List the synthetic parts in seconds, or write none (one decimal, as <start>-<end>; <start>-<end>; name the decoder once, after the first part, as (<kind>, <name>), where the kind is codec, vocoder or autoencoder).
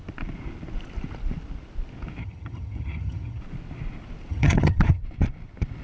2.2-3.4 (vocoder, HiFi-GAN); 4.3-5.0